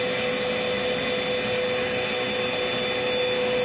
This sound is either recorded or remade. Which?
recorded